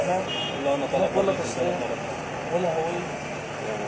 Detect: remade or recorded recorded